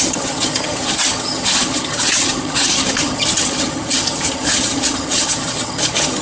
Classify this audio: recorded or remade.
remade